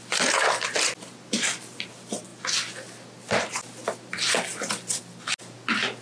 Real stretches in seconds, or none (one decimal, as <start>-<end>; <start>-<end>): 0.0-6.0